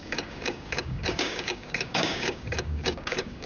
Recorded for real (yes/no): no